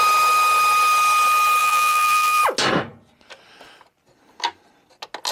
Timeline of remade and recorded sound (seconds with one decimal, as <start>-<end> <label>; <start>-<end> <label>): 0.0-1.6 recorded; 1.6-2.4 remade; 2.4-5.3 recorded